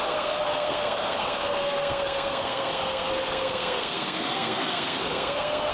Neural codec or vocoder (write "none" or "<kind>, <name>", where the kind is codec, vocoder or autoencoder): codec, SNAC